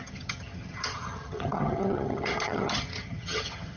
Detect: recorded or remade remade